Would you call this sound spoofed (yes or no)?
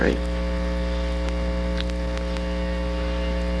no